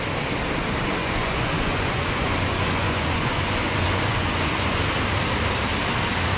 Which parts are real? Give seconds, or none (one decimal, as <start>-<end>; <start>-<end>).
0.0-1.0; 4.8-6.4